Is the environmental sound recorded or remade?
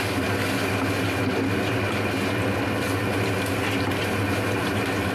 recorded